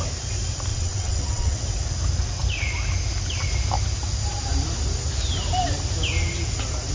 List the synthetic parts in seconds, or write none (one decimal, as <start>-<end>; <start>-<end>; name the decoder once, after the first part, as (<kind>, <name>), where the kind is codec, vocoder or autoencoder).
0.7-1.6 (vocoder, WaveNeXt)